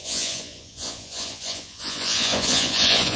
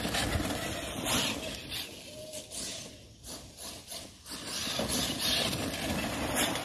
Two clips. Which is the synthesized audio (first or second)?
first